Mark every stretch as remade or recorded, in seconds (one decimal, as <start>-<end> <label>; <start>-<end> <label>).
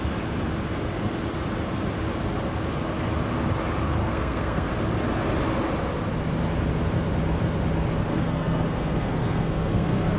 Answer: 0.0-4.0 recorded; 4.0-4.7 remade; 4.7-8.1 recorded; 8.1-10.2 remade